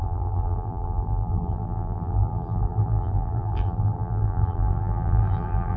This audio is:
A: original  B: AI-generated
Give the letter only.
B